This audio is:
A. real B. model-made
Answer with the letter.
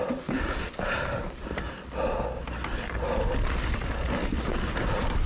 A